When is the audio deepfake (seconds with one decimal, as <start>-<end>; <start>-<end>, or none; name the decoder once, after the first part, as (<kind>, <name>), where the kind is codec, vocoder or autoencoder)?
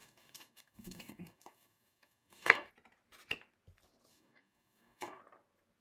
0.0-2.7 (codec, DAC); 4.1-5.2